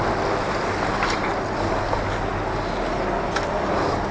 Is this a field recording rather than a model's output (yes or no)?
yes